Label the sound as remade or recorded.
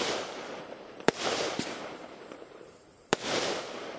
remade